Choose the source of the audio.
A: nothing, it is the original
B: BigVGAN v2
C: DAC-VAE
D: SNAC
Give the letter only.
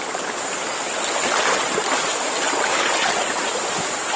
A